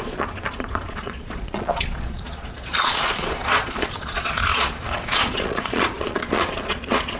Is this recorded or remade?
remade